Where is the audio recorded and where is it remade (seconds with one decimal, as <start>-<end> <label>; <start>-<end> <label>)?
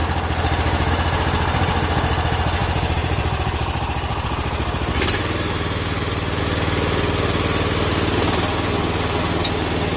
0.0-2.6 recorded; 2.6-6.4 remade; 6.4-10.0 recorded